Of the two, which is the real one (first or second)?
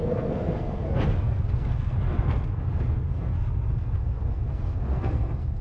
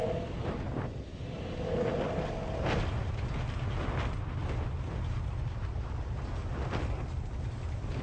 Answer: second